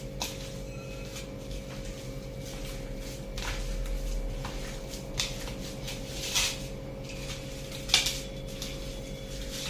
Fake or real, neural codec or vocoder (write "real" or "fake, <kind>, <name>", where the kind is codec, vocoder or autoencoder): real